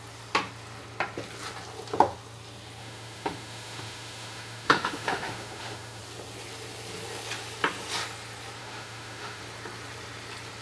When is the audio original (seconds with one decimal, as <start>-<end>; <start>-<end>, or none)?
0.0-2.8; 6.0-8.6; 9.4-10.6